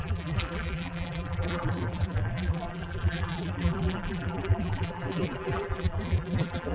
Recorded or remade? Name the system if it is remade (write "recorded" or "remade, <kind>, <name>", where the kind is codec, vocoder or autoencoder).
remade, vocoder, BigVGAN v2